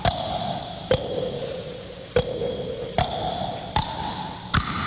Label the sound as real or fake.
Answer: fake